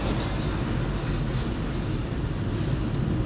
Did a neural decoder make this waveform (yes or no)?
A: no